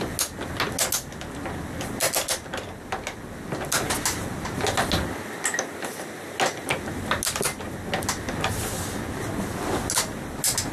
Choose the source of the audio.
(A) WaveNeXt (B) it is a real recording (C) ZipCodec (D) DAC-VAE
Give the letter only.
B